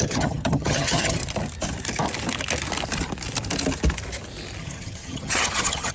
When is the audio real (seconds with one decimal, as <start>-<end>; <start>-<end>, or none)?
1.2-4.6